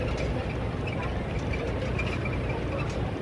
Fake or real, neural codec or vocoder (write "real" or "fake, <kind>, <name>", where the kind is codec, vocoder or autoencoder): real